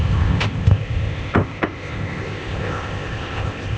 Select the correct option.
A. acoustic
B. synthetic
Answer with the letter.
B